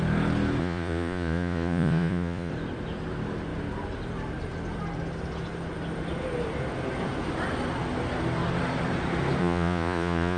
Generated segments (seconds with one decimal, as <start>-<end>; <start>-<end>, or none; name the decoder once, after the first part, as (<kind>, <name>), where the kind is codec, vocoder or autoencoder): 0.6-2.5 (vocoder, Vocos); 9.4-10.4